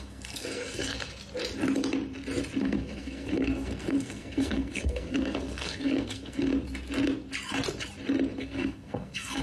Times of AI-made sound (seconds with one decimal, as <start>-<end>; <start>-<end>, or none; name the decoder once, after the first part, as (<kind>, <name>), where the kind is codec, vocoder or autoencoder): 0.0-1.2 (codec, SNAC); 2.6-6.5; 8.4-9.4